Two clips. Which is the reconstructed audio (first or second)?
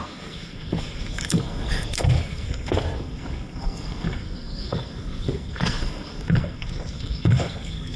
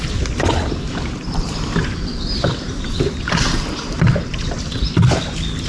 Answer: first